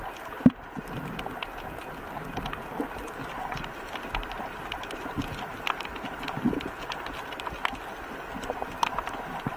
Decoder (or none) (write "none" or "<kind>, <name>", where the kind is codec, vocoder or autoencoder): none